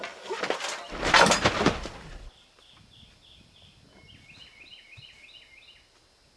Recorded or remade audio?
recorded